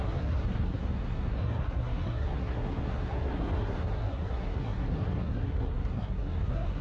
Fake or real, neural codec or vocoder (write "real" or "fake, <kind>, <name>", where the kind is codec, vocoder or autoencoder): fake, codec, SNAC